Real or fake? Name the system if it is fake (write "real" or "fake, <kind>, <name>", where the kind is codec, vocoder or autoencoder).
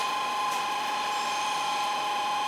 fake, vocoder, BigVGAN v2